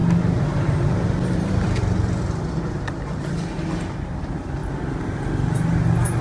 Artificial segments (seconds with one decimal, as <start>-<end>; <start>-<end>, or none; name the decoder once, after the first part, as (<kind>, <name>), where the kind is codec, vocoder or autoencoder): none